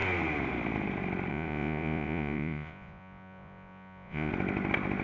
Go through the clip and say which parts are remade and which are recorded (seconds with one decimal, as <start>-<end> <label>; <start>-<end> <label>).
0.0-1.3 recorded; 1.3-4.3 remade; 4.3-5.0 recorded